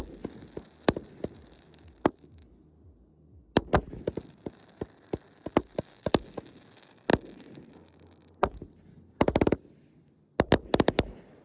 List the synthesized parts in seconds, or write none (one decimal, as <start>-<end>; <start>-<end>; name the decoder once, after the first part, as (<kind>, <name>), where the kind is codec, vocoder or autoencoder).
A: none